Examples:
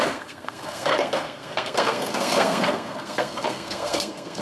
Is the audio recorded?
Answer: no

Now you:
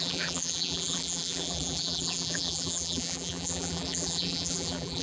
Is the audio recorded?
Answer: no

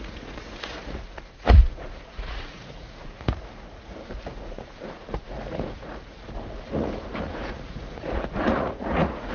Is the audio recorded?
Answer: no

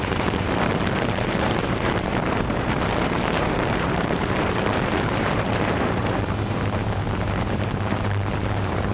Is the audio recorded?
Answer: no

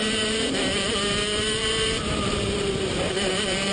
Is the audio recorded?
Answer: no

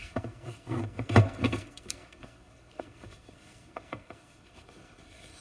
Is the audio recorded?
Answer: no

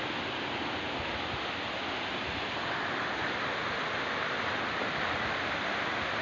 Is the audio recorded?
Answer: yes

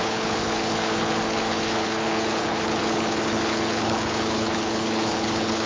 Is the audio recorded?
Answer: no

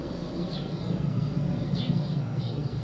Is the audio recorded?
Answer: no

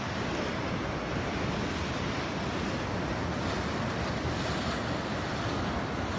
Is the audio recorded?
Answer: yes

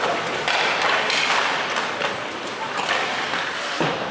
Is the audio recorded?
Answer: yes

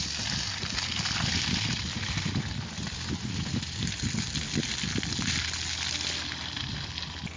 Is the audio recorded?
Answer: yes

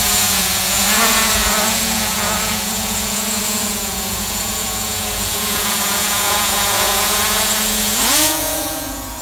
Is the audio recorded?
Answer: no